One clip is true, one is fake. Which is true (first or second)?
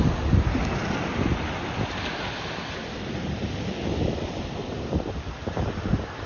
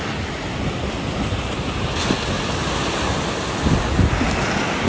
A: second